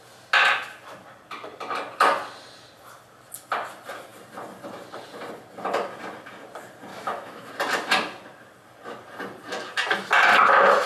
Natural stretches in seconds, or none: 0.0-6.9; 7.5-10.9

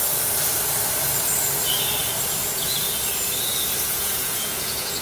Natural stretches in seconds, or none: 0.0-2.4; 2.9-3.5